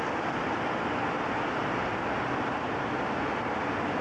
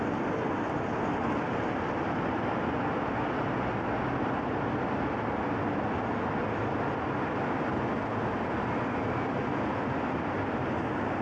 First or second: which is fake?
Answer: first